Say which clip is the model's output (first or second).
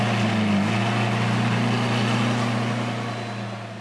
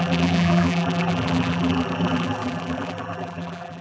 second